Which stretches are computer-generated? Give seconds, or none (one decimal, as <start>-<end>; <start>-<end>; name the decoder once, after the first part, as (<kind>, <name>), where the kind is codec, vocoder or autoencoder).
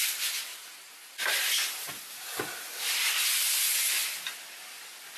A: none